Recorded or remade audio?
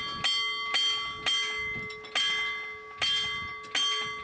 recorded